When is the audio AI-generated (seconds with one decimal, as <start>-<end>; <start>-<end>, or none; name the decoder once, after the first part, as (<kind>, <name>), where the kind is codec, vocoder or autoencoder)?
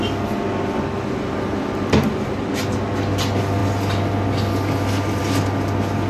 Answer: none